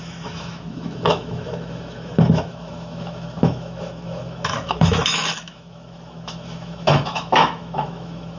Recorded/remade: remade